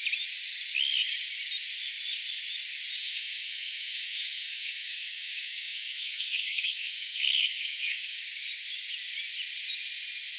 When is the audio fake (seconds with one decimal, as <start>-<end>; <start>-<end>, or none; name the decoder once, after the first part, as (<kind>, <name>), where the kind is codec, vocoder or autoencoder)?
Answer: 3.0-8.2 (codec, SNAC)

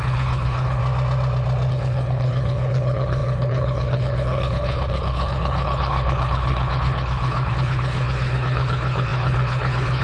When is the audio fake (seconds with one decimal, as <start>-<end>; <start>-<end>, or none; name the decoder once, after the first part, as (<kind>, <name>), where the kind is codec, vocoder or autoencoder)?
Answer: 0.0-0.8 (codec, HILCodec); 1.7-10.0

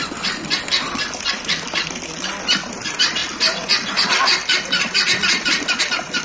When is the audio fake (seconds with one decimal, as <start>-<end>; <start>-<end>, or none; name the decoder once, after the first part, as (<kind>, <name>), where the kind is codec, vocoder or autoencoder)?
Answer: 0.0-2.3 (vocoder, BigVGAN v2); 3.2-5.8